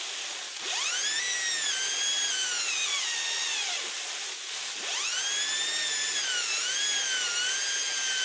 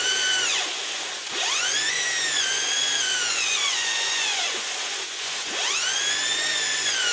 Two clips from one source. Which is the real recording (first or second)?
first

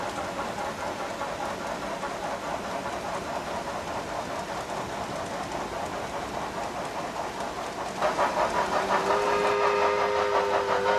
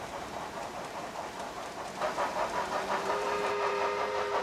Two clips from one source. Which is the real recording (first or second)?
first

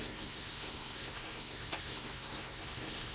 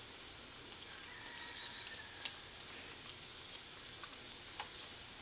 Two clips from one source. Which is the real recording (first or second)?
second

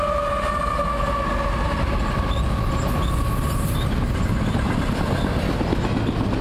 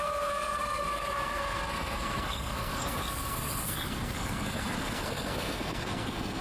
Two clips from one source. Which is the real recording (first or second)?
first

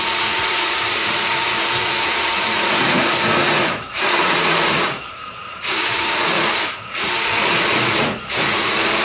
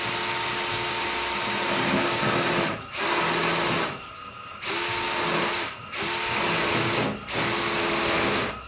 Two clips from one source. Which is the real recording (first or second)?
second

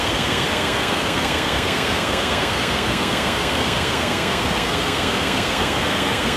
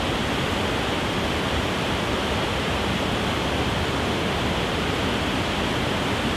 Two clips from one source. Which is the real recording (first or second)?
second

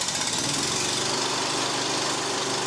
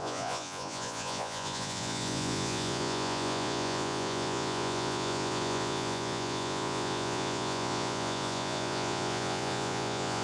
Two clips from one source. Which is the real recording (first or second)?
first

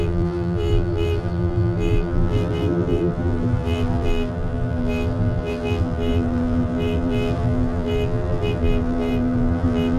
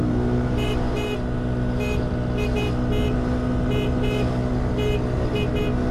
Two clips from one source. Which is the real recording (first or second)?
second